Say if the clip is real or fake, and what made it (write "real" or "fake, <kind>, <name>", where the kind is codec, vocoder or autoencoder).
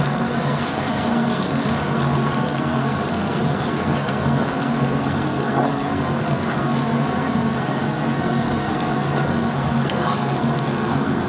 fake, codec, SNAC